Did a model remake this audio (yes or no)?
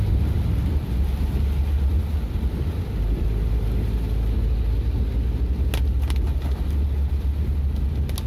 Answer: no